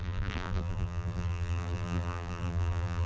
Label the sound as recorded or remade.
remade